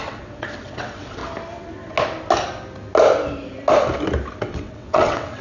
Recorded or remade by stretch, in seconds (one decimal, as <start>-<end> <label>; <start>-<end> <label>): 0.0-1.2 remade; 1.2-4.4 recorded; 4.4-5.4 remade